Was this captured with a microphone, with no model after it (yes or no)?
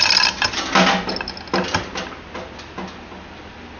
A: yes